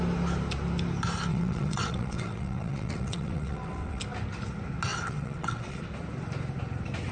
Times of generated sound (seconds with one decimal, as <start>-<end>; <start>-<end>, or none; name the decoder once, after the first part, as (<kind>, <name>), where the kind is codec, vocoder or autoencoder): 1.3-4.0 (vocoder, WaveNeXt); 4.9-5.8